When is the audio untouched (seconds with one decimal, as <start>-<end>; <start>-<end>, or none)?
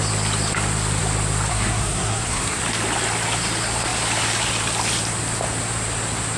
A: 0.0-1.5; 2.6-6.4